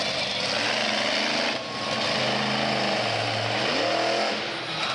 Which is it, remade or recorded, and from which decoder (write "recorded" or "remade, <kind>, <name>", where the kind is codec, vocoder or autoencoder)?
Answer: recorded